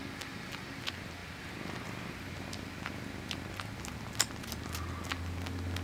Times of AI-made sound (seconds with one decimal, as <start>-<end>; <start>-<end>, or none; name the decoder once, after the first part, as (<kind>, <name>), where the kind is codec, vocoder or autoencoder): none